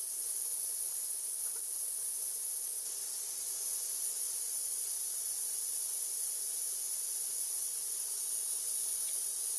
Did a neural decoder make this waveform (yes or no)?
no